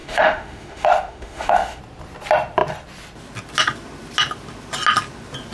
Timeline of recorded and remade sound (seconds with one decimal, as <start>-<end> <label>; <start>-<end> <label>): 0.0-1.8 remade; 1.8-5.5 recorded